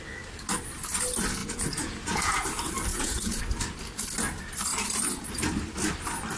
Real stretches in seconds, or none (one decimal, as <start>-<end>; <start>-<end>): 0.0-1.4; 2.4-2.9; 3.4-6.4